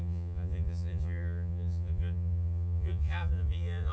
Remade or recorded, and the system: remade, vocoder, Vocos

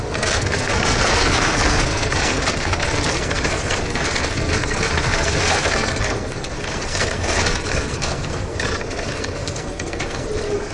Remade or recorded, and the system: remade, codec, SNAC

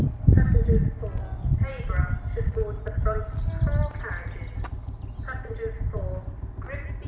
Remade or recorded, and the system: recorded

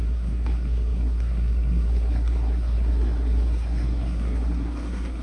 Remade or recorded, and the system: remade, codec, SNAC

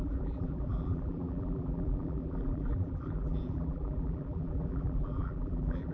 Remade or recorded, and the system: remade, vocoder, BigVGAN v2